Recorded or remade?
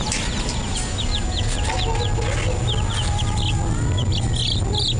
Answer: recorded